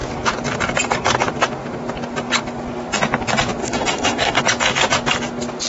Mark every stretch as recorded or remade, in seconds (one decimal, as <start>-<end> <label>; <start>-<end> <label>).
0.0-3.6 recorded; 3.6-4.4 remade; 4.4-5.7 recorded